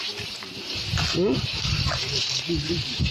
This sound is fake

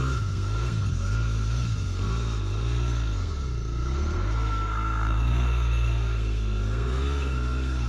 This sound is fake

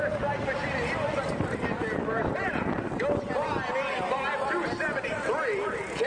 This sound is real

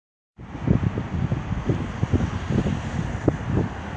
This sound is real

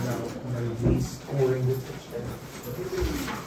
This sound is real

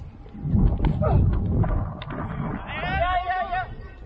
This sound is real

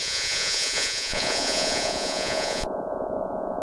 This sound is fake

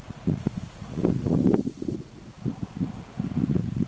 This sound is fake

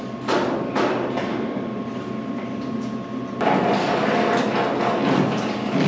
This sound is real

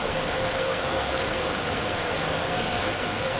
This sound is fake